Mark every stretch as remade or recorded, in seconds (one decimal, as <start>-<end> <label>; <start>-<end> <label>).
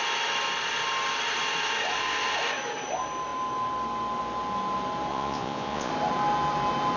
0.0-5.1 recorded; 5.1-5.9 remade; 5.9-7.0 recorded